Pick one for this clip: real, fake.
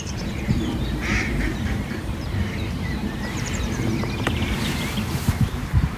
fake